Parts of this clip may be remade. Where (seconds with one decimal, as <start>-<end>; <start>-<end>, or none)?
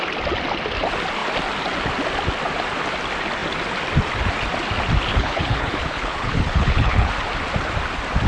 5.1-7.1